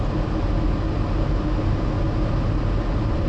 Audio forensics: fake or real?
real